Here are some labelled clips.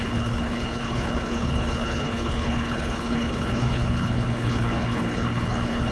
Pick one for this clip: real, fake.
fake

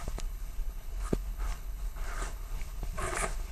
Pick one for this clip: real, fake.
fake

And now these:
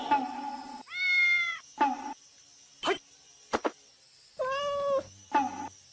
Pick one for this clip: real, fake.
real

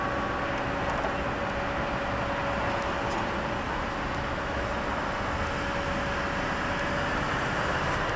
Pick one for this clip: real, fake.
real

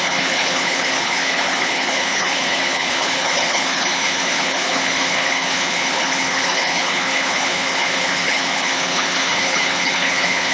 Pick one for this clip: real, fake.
fake